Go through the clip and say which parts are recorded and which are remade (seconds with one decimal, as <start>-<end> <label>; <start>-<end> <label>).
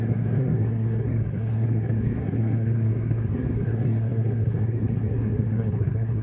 0.0-6.2 remade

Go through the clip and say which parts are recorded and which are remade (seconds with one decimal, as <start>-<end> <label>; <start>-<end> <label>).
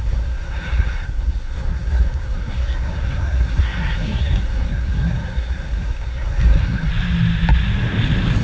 0.0-6.9 remade; 6.9-8.4 recorded